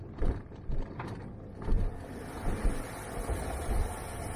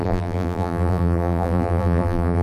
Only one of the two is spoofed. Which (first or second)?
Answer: second